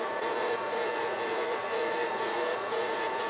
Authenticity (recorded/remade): remade